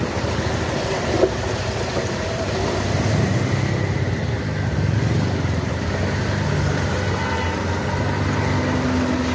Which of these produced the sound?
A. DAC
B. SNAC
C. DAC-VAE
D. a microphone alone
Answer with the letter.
D